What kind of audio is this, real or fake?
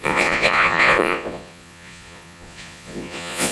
fake